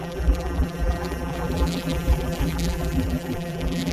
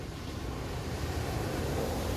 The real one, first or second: second